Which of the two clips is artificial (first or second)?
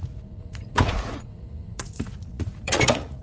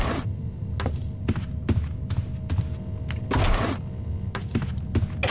first